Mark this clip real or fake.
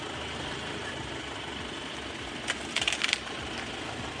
real